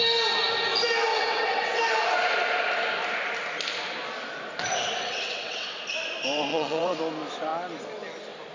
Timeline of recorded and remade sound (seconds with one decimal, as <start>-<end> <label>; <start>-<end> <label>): 0.0-1.1 recorded; 1.1-1.8 remade; 1.8-5.0 recorded; 5.0-5.8 remade; 5.8-6.5 recorded; 6.5-7.0 remade; 7.0-8.5 recorded